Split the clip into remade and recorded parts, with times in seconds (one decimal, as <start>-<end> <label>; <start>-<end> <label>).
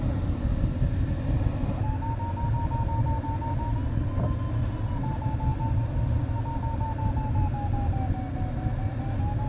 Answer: 0.0-9.5 recorded